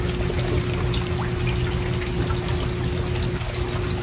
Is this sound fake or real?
real